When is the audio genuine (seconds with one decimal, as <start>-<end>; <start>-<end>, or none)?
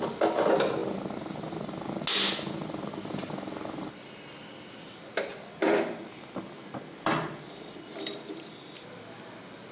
0.0-0.8; 1.6-5.3; 8.7-9.7